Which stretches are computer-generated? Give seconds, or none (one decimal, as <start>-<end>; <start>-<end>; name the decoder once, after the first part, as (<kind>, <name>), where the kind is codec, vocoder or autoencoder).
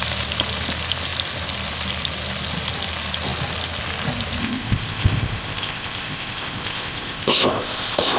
4.4-8.2 (codec, ZipCodec)